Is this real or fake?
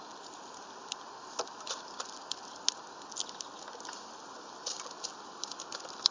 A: real